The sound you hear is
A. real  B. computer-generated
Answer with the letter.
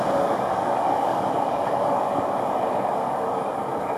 B